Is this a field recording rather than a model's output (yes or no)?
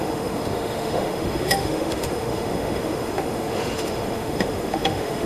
no